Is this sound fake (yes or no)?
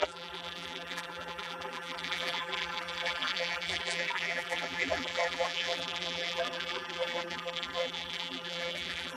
yes